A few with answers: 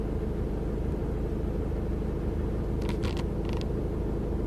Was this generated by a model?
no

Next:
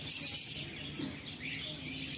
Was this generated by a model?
no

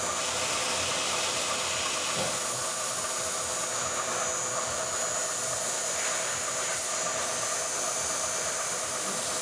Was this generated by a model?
no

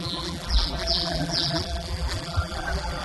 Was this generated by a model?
yes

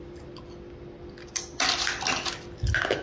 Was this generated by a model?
no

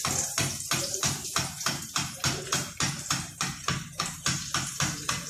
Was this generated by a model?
yes